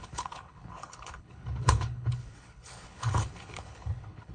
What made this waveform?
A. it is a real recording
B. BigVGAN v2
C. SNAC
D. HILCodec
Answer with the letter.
D